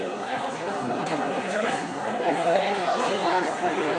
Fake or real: fake